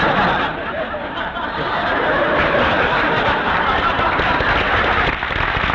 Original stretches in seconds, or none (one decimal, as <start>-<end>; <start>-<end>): 0.0-0.6; 4.0-5.7